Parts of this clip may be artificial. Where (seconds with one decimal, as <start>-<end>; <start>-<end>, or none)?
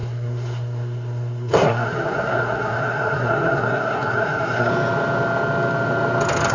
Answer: 0.0-4.7